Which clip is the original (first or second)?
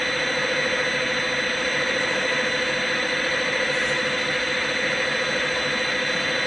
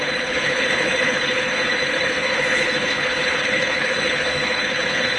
first